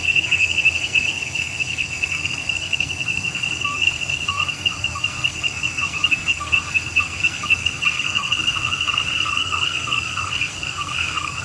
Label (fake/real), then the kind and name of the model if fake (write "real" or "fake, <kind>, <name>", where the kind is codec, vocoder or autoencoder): fake, codec, SNAC